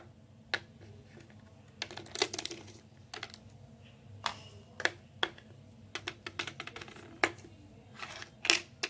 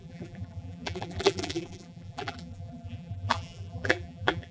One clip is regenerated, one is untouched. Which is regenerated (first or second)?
second